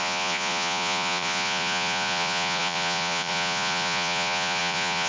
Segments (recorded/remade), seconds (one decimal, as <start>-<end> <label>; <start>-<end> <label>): 0.0-5.1 remade